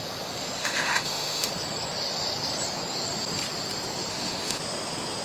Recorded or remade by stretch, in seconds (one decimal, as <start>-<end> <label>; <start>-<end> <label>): 0.0-0.6 recorded; 0.6-1.5 remade; 1.5-4.1 recorded; 4.1-4.6 remade; 4.6-5.2 recorded